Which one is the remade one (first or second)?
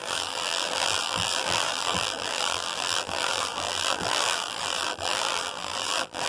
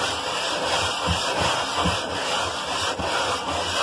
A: first